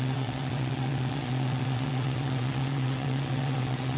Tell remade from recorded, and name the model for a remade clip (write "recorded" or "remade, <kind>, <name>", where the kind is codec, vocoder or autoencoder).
remade, vocoder, WaveNeXt